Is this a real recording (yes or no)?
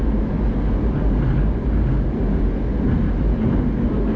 yes